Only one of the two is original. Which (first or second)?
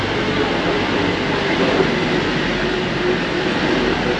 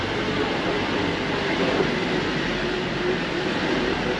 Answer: first